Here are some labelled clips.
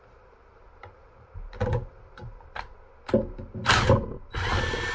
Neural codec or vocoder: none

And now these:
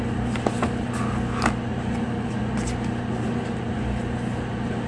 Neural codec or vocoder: none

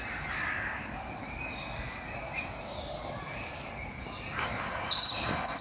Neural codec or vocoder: none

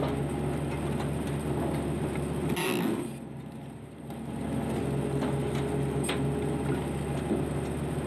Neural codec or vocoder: none